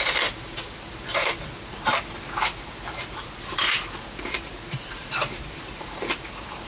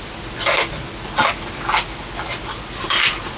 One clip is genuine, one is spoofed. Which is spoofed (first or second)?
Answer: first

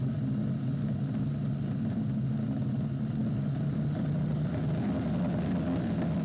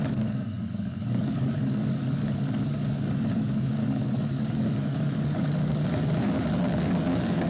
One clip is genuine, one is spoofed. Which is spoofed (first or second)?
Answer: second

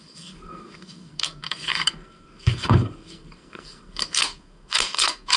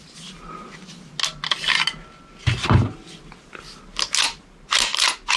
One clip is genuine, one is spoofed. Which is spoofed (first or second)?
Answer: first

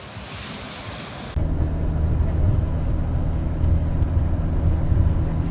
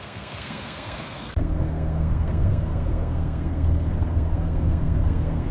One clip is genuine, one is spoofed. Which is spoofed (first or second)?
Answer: second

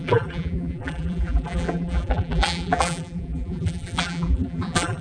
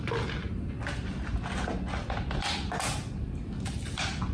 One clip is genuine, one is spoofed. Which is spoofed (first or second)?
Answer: first